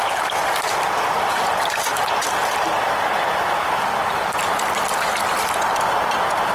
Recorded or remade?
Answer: recorded